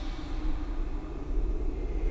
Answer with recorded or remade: recorded